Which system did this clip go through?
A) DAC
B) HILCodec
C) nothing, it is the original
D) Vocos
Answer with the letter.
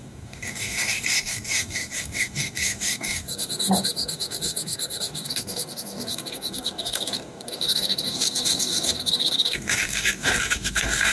A